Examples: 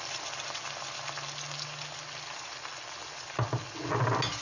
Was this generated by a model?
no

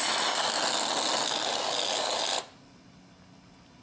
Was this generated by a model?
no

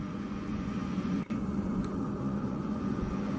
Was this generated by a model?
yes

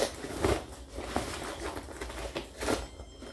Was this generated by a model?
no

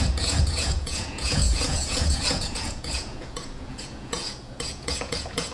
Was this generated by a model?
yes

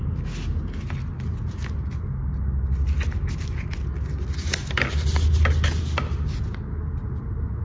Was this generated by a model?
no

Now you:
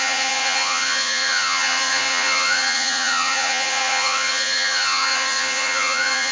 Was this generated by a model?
yes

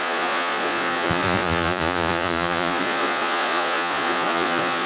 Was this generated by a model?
yes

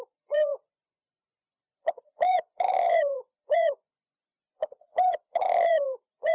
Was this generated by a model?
yes